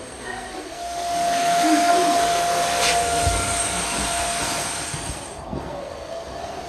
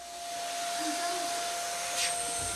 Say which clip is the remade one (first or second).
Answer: first